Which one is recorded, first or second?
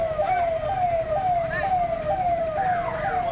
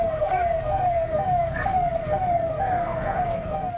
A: first